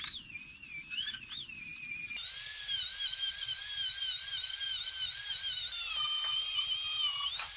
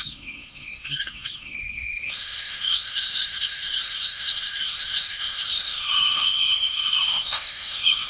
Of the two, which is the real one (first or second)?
first